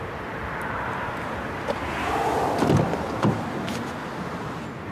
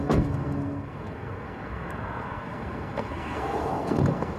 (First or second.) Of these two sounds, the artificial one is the second